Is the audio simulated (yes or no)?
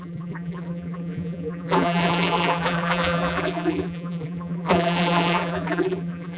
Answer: yes